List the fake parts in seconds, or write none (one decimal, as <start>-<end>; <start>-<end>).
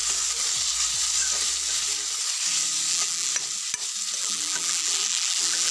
2.9-3.3; 4.2-5.7